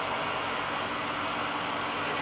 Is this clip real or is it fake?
real